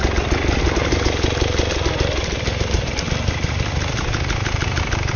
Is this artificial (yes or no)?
no